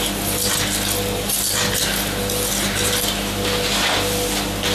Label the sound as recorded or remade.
recorded